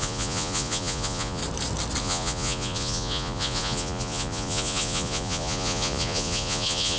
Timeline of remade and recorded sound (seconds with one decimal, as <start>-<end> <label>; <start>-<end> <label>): 0.0-1.4 remade; 1.4-2.0 recorded; 2.0-7.0 remade